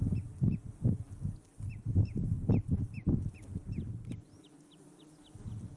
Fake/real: real